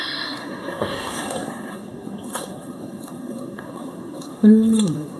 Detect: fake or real fake